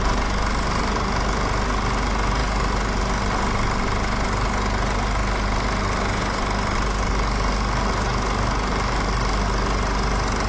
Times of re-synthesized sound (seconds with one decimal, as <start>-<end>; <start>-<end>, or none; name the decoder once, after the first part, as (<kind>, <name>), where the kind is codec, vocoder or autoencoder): none